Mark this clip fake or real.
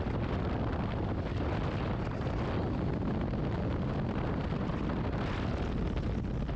real